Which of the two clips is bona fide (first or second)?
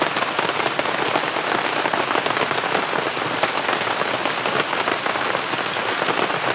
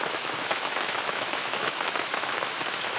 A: first